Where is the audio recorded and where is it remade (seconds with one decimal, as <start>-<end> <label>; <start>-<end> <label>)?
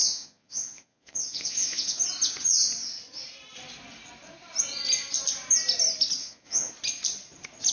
0.0-2.0 remade; 2.0-6.2 recorded; 6.2-6.7 remade; 6.7-7.7 recorded